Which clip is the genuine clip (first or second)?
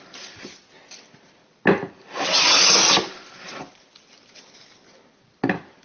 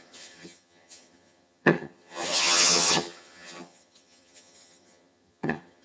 first